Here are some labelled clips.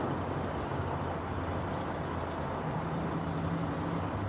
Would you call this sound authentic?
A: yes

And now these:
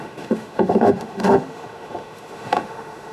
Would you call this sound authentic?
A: no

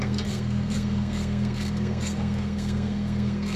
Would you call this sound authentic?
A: no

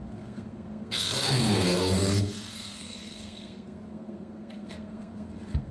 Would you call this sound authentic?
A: no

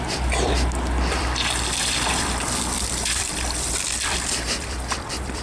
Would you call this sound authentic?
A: no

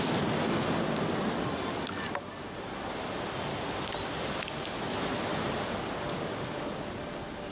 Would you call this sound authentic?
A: yes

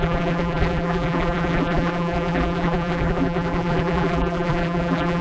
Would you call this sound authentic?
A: no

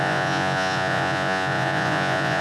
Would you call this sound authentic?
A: no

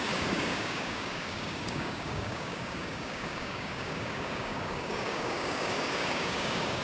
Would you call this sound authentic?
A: no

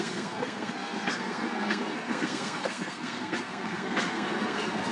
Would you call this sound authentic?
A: no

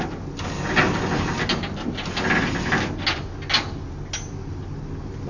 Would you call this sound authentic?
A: yes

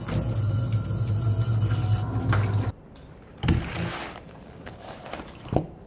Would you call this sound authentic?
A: yes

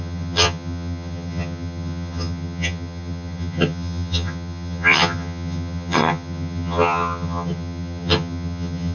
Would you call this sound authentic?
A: no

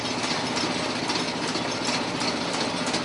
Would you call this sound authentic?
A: yes